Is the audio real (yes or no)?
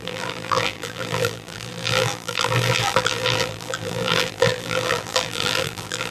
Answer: no